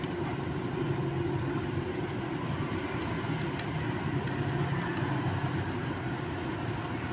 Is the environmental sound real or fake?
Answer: real